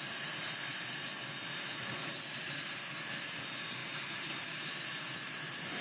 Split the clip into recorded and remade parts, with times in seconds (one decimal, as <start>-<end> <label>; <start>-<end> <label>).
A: 0.0-3.8 recorded; 3.8-4.6 remade; 4.6-5.8 recorded